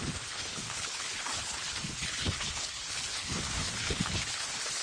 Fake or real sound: fake